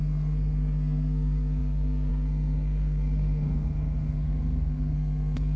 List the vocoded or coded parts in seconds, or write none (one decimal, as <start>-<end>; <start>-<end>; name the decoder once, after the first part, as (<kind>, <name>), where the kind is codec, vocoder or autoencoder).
0.0-5.6 (codec, SNAC)